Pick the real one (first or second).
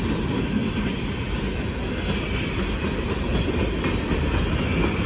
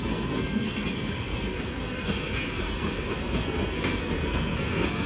first